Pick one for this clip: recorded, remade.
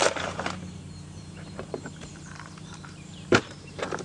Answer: remade